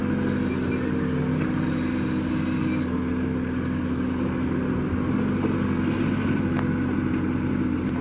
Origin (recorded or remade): recorded